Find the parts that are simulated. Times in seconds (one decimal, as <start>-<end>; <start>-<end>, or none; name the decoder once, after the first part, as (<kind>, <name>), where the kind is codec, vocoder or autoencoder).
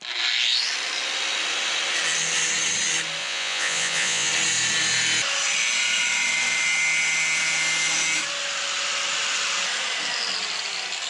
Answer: 3.2-4.3 (vocoder, Vocos)